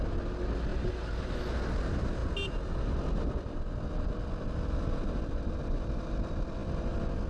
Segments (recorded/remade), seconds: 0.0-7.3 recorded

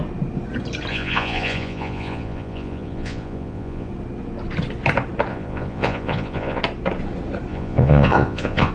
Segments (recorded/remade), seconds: 0.0-0.9 recorded; 0.9-3.9 remade; 3.9-5.3 recorded; 5.3-6.6 remade; 6.6-7.5 recorded; 7.5-8.7 remade

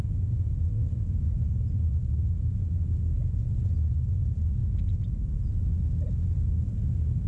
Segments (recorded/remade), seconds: 0.0-7.3 recorded

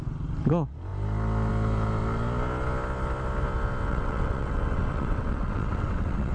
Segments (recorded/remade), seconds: 0.0-3.9 recorded; 3.9-6.3 remade